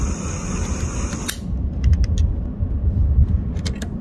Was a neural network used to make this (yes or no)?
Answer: no